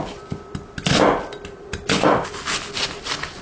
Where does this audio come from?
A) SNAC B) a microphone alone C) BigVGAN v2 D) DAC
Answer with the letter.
B